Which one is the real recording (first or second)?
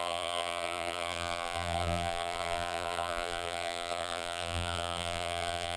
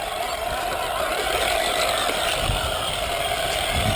second